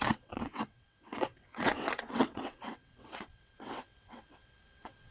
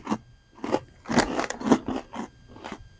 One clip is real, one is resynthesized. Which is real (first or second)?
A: second